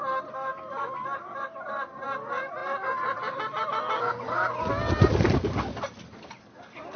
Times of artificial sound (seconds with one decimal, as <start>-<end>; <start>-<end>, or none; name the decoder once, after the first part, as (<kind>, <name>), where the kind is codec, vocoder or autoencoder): none